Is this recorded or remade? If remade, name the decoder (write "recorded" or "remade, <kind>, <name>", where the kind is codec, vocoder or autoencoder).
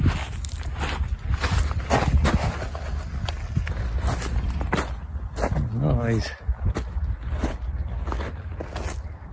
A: recorded